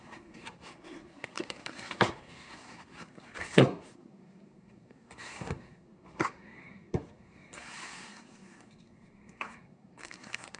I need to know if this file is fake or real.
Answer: fake